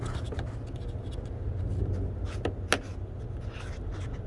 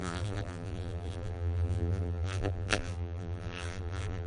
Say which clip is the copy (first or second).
second